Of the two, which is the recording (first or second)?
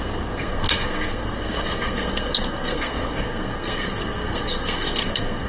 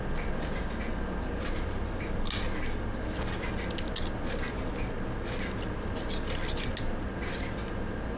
second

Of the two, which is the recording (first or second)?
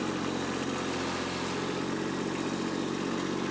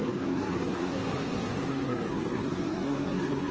first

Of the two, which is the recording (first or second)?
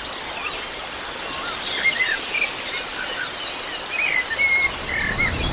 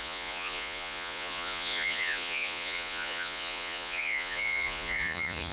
first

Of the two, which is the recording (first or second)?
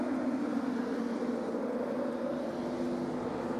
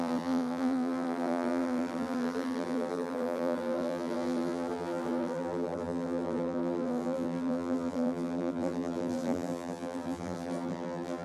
first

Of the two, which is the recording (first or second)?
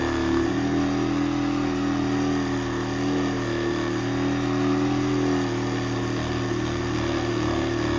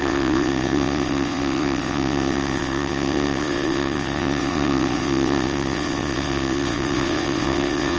first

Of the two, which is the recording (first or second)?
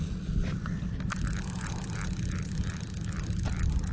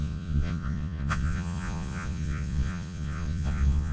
first